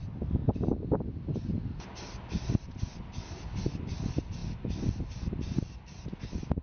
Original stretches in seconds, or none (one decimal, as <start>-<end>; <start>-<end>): 0.0-6.6